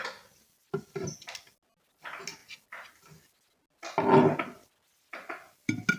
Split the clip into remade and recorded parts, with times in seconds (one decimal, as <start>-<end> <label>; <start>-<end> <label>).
0.0-6.0 recorded